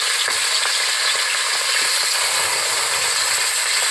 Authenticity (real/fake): real